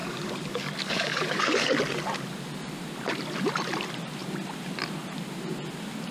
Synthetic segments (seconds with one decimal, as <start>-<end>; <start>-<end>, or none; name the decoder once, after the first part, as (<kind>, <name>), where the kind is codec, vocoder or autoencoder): 0.0-1.8 (codec, DAC)

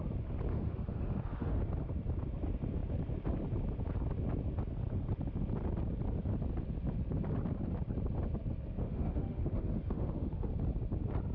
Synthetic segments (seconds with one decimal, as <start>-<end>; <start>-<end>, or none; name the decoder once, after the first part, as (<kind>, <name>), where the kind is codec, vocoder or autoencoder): 0.5-1.6 (autoencoder, DAC-VAE); 8.8-10.5